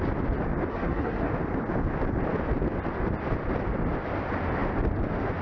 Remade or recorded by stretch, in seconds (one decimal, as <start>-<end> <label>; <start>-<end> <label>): 0.0-0.7 recorded; 0.7-1.3 remade; 1.3-5.4 recorded